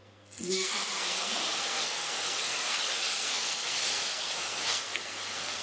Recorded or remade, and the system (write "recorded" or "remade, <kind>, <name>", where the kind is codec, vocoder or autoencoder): remade, codec, SNAC